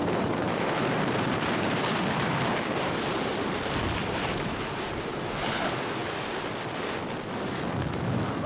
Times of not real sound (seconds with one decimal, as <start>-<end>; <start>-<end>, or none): 0.0-2.6; 4.0-4.9